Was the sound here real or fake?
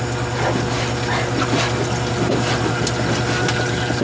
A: real